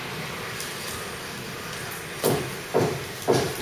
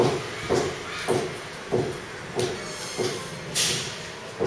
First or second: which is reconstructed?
first